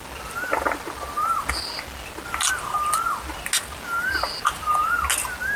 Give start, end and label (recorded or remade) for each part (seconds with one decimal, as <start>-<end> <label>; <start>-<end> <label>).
0.0-5.6 recorded